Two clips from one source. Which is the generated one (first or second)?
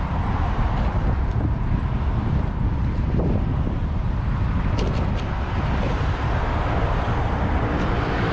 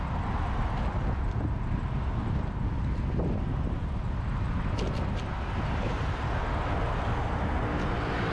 first